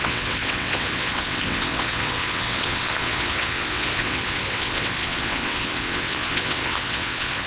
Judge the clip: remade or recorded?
remade